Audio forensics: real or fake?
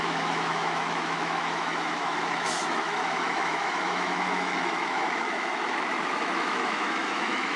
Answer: fake